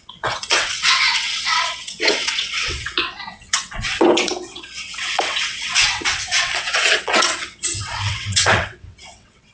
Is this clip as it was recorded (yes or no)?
no